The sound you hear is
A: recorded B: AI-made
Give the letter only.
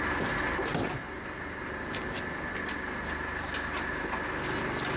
A